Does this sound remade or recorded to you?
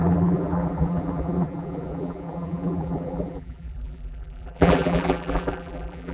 remade